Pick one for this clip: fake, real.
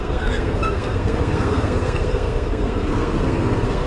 fake